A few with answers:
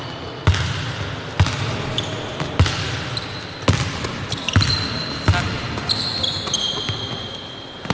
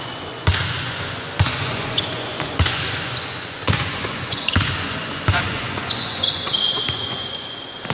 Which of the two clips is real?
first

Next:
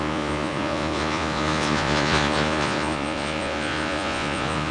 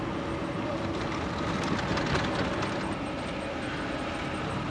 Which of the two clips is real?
second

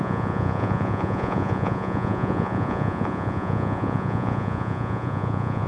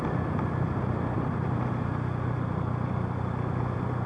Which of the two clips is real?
second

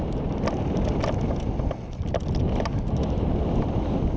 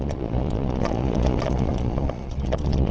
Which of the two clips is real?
first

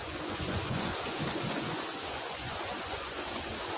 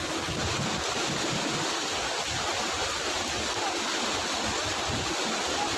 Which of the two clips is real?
second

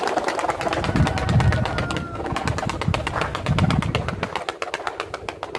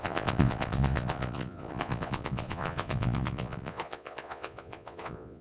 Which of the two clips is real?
first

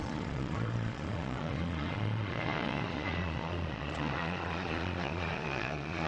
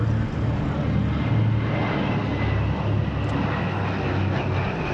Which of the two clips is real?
second